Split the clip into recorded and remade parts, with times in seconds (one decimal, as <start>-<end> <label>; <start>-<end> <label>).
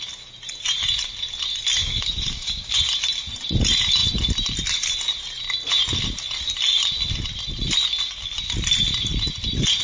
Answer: 0.0-1.8 recorded; 1.8-2.7 remade; 2.7-9.8 recorded